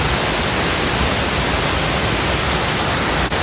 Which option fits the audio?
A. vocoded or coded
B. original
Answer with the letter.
B